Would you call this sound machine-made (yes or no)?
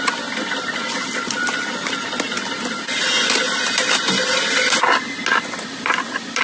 no